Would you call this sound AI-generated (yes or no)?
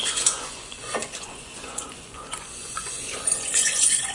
yes